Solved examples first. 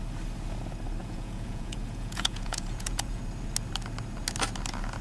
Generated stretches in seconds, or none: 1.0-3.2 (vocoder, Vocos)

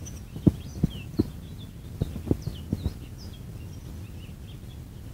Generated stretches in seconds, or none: none

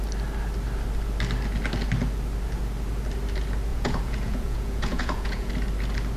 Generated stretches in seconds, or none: 3.7-5.5 (vocoder, Vocos)

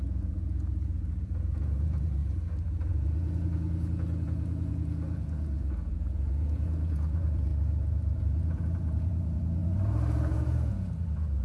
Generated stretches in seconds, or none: 0.0-2.2 (vocoder, Vocos); 2.9-9.6; 10.2-11.4